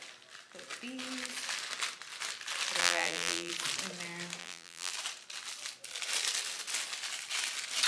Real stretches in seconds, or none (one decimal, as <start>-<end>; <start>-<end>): 0.0-2.8; 3.5-4.4; 4.9-7.9